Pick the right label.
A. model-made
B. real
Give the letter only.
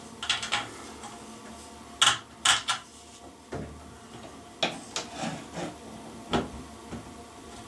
B